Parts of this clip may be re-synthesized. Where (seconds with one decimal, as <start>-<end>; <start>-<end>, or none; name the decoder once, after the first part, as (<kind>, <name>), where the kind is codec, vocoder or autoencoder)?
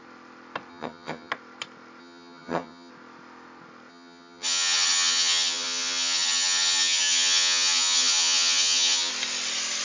0.7-1.3 (vocoder, HiFi-GAN); 2.0-2.9; 3.9-9.1